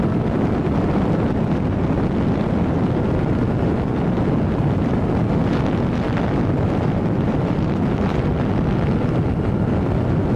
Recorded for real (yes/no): yes